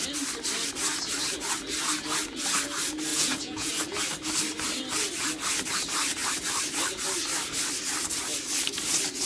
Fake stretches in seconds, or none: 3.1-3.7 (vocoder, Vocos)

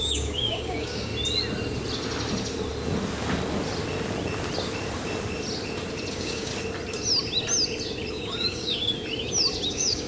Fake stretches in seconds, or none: 0.0-1.1 (codec, DAC); 6.1-6.5; 8.1-8.9; 9.7-10.1

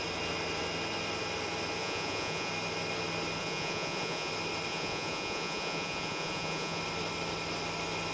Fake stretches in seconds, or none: 1.8-2.5 (vocoder, Vocos); 3.4-4.3; 4.7-6.8

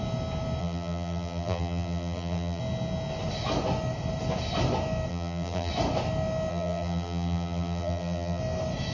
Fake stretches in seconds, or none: 0.6-2.6 (vocoder, BigVGAN v2); 5.1-5.7; 6.5-8.4

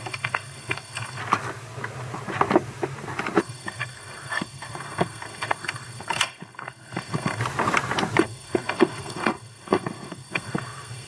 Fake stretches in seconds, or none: 0.0-1.2 (codec, SNAC); 3.4-7.4; 8.2-11.1